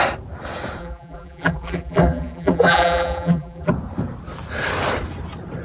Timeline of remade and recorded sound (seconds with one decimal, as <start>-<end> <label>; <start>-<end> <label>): 0.0-0.8 recorded; 0.8-3.7 remade; 3.7-5.6 recorded